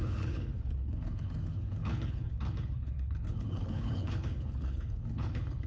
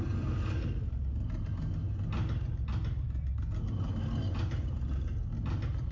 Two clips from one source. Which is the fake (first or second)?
first